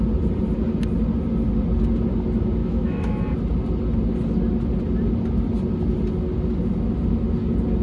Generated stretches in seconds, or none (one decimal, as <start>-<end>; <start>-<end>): 2.6-3.2